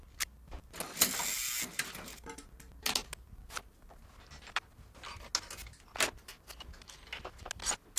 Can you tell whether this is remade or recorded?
recorded